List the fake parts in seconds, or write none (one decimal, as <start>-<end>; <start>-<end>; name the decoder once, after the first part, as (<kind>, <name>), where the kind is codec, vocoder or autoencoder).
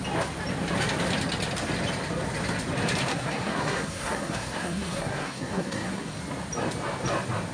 3.1-6.2 (codec, SNAC)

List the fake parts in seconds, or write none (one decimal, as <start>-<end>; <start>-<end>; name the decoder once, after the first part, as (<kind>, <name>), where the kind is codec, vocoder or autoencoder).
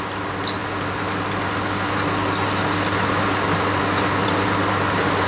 4.2-5.3 (vocoder, BigVGAN v2)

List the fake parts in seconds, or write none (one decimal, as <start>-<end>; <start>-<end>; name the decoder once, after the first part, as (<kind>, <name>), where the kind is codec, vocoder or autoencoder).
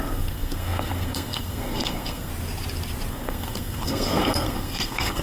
0.0-2.3 (codec, SNAC); 3.1-5.2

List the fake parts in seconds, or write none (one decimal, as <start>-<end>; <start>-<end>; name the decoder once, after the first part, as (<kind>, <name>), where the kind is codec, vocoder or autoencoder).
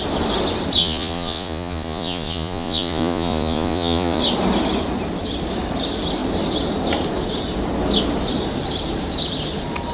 0.8-4.2 (vocoder, Vocos)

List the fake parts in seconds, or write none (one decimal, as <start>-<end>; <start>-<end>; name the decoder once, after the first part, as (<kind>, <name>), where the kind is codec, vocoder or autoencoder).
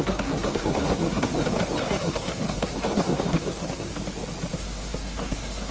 0.0-1.3 (codec, SNAC); 1.8-3.9; 4.5-5.7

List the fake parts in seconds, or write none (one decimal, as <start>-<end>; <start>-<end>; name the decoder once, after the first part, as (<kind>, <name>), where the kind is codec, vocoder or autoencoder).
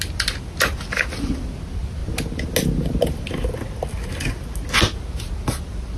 none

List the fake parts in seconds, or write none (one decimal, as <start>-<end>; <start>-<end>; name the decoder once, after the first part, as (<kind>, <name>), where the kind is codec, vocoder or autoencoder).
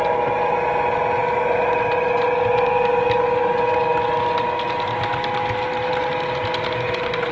none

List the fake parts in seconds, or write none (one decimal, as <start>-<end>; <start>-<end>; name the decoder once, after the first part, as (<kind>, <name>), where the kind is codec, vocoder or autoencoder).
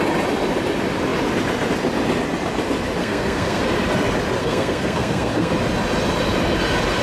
3.0-3.6 (codec, SNAC); 4.4-5.5